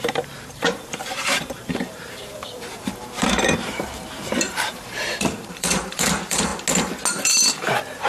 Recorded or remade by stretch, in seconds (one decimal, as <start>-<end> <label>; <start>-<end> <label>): 0.0-6.5 remade; 6.5-7.3 recorded; 7.3-8.1 remade